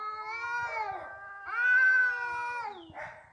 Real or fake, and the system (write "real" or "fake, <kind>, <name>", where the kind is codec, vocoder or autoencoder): real